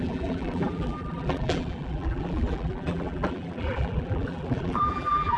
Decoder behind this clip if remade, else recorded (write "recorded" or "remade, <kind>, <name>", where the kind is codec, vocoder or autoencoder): remade, vocoder, BigVGAN v2